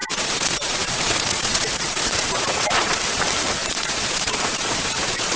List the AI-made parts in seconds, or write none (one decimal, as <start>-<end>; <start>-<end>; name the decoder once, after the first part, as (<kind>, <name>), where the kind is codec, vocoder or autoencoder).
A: 0.0-3.0 (vocoder, Vocos); 3.6-5.4